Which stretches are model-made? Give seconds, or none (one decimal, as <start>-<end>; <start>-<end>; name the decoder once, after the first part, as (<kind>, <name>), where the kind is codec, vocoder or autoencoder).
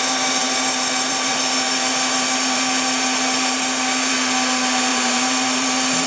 0.4-4.1 (vocoder, BigVGAN v2); 4.9-6.1